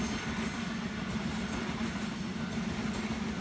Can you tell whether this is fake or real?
real